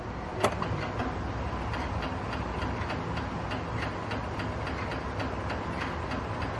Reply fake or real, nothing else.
real